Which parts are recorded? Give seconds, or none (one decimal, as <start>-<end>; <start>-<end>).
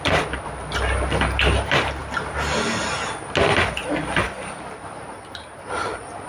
0.0-6.3